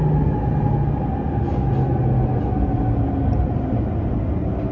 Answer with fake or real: real